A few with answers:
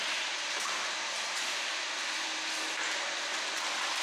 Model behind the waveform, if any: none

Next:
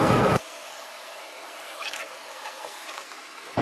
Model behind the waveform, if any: codec, SNAC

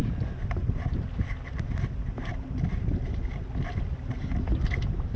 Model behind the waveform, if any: none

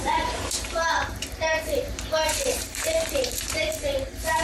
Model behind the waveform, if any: vocoder, BigVGAN v2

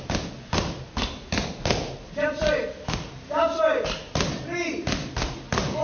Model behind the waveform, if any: none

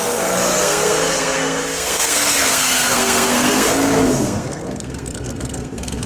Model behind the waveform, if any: codec, SNAC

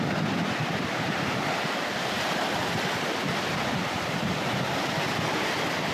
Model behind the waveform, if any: vocoder, BigVGAN v2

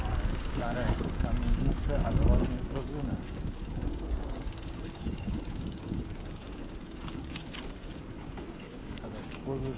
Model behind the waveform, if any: codec, DAC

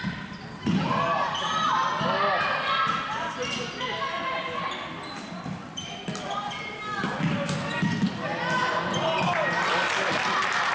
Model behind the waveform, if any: none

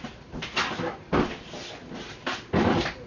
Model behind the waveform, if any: none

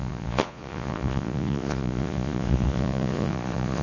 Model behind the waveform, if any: vocoder, Vocos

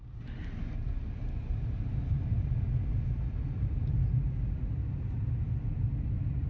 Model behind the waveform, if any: none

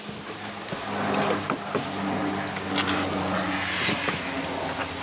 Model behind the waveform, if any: none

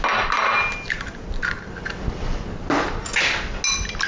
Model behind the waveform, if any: none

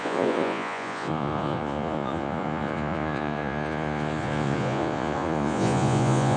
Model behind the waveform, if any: vocoder, Vocos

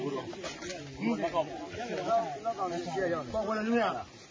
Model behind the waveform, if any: none